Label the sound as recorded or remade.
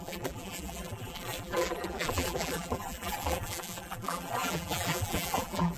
remade